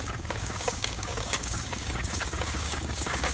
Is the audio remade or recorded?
remade